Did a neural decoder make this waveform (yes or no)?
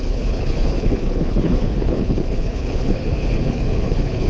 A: yes